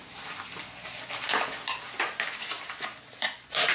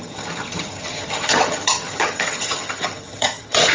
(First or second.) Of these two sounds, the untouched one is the first